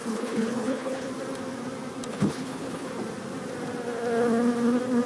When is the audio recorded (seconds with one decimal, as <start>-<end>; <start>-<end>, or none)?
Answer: 1.1-2.1; 2.9-5.1